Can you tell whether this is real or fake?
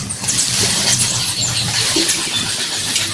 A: real